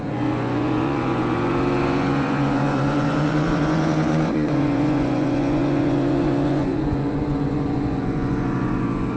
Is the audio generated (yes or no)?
yes